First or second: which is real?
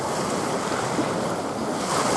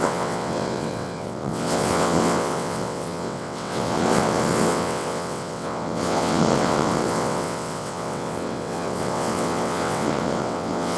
first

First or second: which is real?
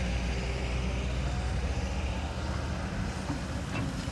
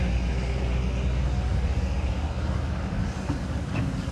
first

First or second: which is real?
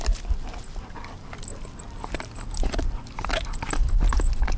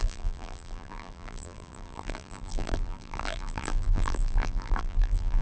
first